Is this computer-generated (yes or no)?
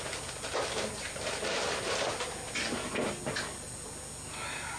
no